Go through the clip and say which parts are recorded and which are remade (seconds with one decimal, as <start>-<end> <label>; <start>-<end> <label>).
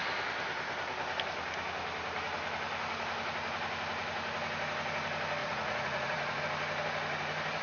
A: 0.0-5.4 recorded; 5.4-6.4 remade; 6.4-7.6 recorded